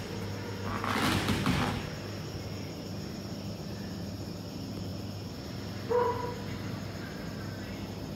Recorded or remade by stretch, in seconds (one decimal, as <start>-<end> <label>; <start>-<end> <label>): 0.0-8.2 recorded